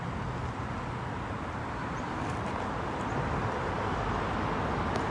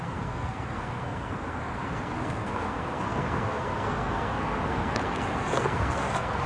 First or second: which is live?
first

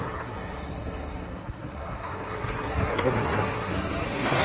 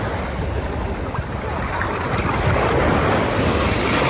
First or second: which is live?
second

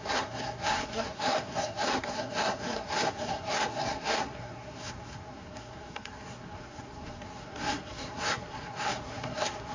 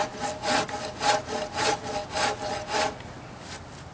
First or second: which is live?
second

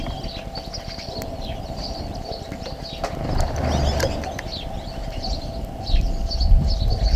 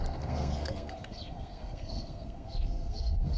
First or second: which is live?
first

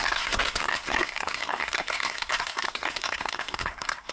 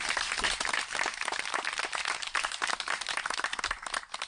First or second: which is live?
second